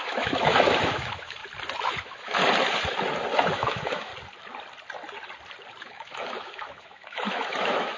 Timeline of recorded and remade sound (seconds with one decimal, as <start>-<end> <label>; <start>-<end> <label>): 0.0-1.4 remade; 1.4-2.0 recorded; 2.0-2.4 remade; 2.4-3.5 recorded; 3.5-4.1 remade; 4.1-5.8 recorded; 5.8-8.0 remade